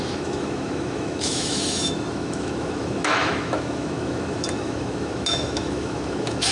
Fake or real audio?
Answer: fake